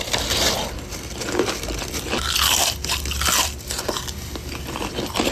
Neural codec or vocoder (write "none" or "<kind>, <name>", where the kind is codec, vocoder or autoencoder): vocoder, BigVGAN v2